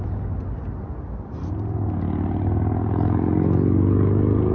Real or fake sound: real